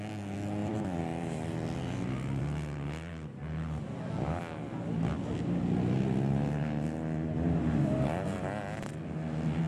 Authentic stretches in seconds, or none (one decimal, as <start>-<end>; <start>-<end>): 0.0-0.6; 2.4-9.7